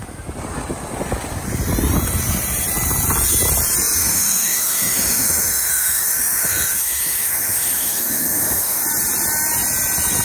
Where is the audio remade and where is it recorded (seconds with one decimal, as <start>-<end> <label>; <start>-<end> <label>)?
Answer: 0.0-4.0 recorded; 4.0-8.8 remade; 8.8-10.2 recorded